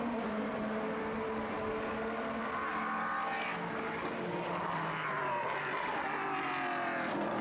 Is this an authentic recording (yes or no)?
yes